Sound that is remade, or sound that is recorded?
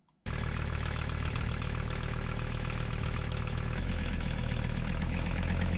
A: remade